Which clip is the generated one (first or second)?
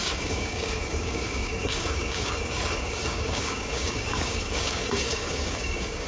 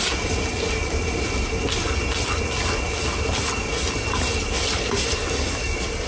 first